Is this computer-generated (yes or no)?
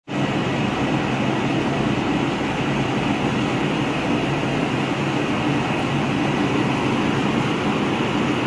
no